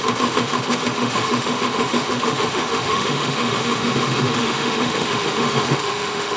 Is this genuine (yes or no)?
no